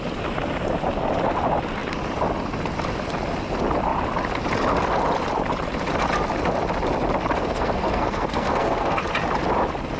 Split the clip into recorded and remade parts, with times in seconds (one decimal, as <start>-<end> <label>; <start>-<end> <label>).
0.0-7.4 recorded; 7.4-9.0 remade; 9.0-10.0 recorded